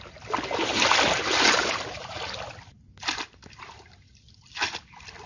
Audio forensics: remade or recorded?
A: recorded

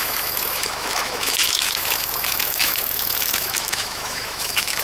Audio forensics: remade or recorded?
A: remade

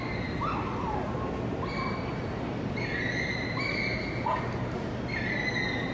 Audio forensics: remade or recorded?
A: recorded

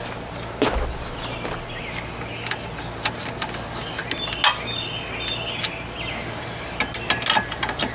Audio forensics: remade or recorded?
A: recorded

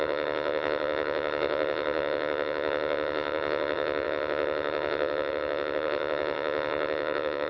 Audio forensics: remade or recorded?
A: remade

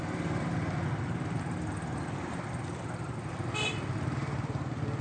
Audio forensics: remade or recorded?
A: remade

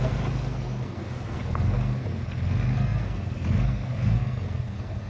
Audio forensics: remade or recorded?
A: remade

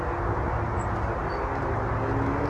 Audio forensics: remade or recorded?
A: recorded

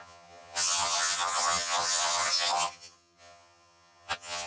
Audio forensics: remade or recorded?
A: remade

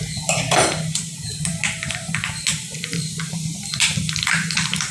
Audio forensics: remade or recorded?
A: remade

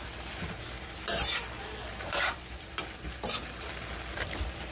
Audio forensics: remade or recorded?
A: remade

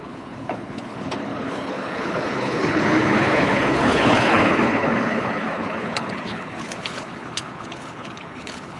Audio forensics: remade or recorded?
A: remade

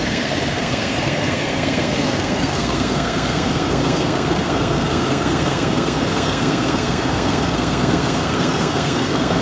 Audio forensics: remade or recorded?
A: remade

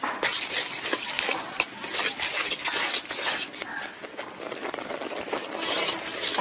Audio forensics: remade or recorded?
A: recorded